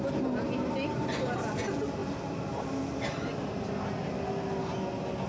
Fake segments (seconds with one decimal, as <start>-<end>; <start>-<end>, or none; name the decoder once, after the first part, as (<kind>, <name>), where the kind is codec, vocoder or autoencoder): none